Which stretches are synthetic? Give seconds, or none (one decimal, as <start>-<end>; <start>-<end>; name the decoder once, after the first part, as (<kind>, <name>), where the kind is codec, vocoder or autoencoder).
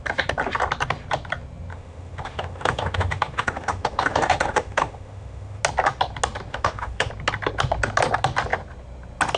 1.7-5.6 (autoencoder, DAC-VAE); 6.5-7.1